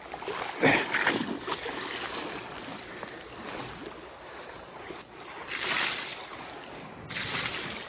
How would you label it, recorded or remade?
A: recorded